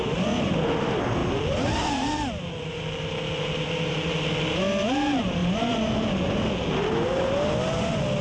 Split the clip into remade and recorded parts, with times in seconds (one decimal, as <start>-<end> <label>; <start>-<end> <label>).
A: 0.0-8.2 recorded